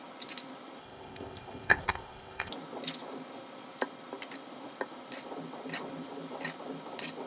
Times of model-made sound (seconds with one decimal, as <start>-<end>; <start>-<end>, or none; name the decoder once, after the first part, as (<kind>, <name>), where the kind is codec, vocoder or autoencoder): 0.8-2.5 (codec, ZipCodec)